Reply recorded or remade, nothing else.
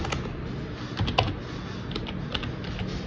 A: recorded